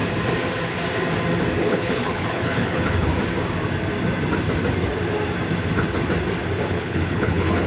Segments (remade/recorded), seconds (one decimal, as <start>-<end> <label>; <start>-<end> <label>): 0.0-1.6 recorded; 1.6-3.1 remade; 3.1-6.7 recorded; 6.7-7.7 remade